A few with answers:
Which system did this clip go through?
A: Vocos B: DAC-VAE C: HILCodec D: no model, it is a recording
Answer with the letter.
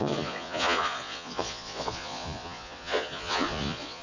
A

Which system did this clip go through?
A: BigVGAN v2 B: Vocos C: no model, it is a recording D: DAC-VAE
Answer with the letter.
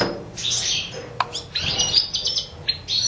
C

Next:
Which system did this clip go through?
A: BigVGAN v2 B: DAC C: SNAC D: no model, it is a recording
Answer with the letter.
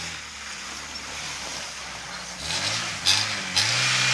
D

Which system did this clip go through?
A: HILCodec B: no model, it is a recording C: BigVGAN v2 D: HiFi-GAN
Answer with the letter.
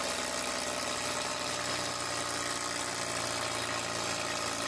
B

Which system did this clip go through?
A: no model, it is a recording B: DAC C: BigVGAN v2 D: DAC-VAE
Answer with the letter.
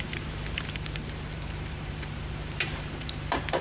C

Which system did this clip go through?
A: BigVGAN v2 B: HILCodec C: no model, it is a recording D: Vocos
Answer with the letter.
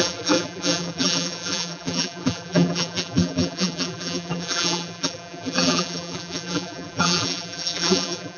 A